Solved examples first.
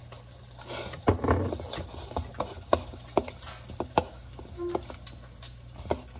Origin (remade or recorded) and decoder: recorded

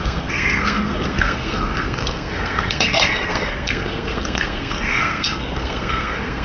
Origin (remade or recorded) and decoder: remade, codec, SNAC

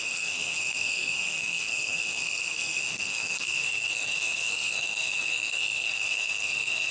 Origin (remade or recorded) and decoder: remade, codec, SNAC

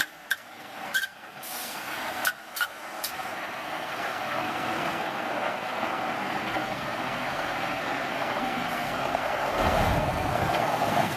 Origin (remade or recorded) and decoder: remade, codec, SNAC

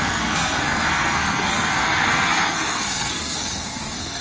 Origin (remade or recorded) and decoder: remade, codec, SNAC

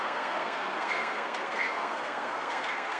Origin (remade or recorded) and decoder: remade, codec, SNAC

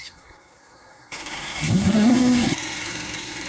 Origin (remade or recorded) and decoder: remade, codec, SNAC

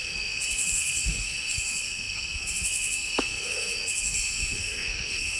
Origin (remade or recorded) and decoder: remade, codec, SNAC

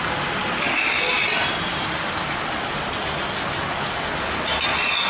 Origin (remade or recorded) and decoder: recorded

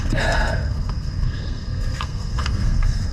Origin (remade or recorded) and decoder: remade, codec, SNAC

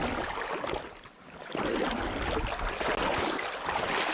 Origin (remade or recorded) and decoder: recorded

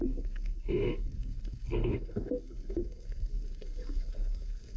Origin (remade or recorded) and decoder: remade, codec, SNAC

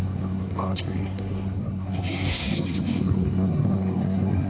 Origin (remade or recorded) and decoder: remade, codec, SNAC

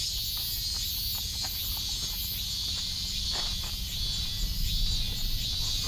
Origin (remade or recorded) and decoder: recorded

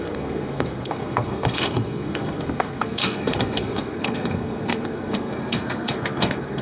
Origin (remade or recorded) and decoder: remade, codec, SNAC